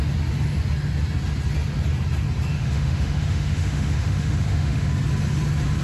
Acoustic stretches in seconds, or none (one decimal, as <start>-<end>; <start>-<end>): 0.0-2.5; 4.9-5.8

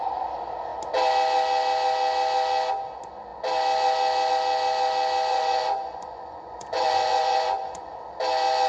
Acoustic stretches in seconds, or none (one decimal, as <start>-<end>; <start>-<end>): 0.0-5.3; 7.9-8.7

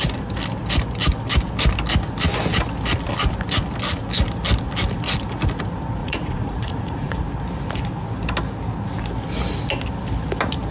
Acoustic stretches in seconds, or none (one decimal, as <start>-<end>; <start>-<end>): 0.0-6.0; 7.3-10.7

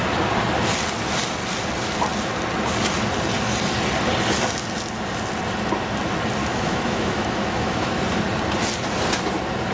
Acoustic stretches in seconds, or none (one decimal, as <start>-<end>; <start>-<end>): 0.0-6.4; 8.0-9.7

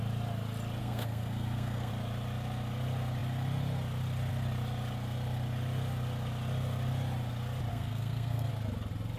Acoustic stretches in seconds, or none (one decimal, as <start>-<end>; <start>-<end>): 0.0-0.8; 1.9-7.7; 8.5-9.2

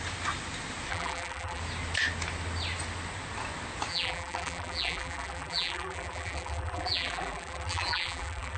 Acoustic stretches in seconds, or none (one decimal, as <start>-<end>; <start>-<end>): 0.0-0.9; 1.6-3.9

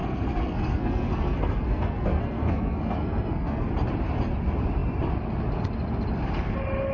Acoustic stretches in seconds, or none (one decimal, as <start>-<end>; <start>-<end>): 3.7-6.9